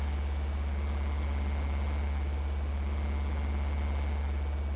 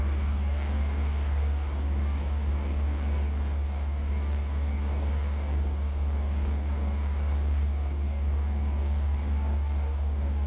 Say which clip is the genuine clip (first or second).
first